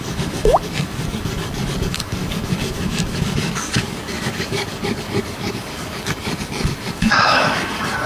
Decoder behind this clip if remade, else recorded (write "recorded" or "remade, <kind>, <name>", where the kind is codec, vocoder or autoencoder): remade, codec, DAC